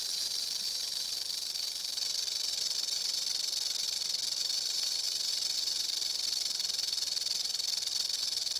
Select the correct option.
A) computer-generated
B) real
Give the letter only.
A